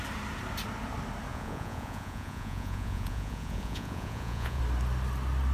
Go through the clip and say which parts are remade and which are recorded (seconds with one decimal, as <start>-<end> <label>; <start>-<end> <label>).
0.0-1.3 recorded; 1.3-4.6 remade; 4.6-5.5 recorded